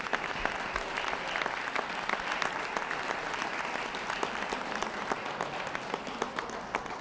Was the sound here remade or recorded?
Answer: recorded